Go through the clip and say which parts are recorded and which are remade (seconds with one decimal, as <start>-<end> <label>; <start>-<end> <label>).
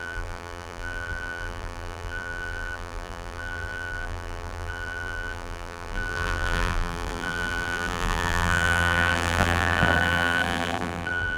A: 0.0-11.4 remade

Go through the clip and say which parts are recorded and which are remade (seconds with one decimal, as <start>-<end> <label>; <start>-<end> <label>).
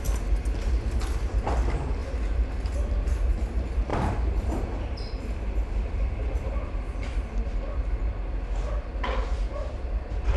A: 0.0-3.9 recorded; 3.9-6.5 remade; 6.5-10.4 recorded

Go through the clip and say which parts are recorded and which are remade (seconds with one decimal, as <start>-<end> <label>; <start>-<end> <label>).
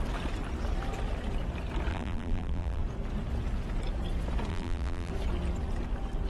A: 0.0-1.9 recorded; 1.9-2.8 remade; 2.8-4.5 recorded; 4.5-5.1 remade; 5.1-6.3 recorded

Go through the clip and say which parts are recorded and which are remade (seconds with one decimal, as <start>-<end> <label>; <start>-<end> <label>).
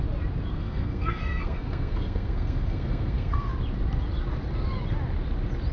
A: 0.0-0.5 recorded; 0.5-3.5 remade; 3.5-5.7 recorded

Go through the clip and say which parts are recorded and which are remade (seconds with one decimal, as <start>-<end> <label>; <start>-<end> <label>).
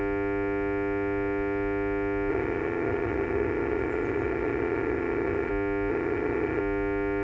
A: 0.0-2.3 recorded; 2.3-5.5 remade; 5.5-5.9 recorded; 5.9-6.6 remade; 6.6-7.2 recorded